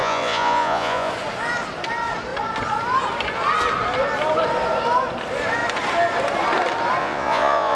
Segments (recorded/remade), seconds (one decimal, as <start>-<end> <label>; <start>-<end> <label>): 0.0-1.1 remade; 1.1-7.0 recorded; 7.0-7.8 remade